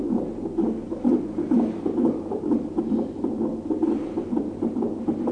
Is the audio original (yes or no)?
yes